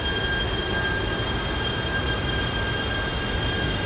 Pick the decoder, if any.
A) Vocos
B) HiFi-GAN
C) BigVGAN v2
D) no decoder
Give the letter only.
D